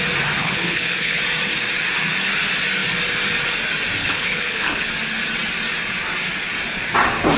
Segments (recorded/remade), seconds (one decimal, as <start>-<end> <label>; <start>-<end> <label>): 0.0-0.4 recorded; 0.4-1.2 remade; 1.2-4.0 recorded; 4.0-4.9 remade; 4.9-7.4 recorded